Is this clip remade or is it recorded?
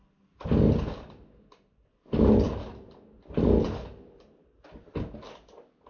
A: recorded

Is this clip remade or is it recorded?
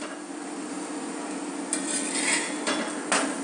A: recorded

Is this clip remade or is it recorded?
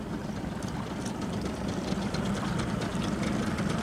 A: remade